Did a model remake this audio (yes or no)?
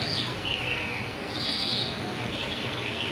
yes